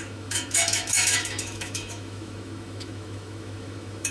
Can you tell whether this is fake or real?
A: fake